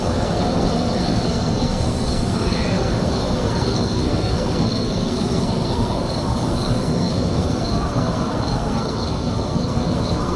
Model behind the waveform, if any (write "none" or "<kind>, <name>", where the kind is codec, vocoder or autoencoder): codec, SNAC